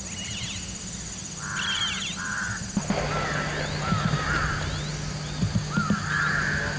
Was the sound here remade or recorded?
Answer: recorded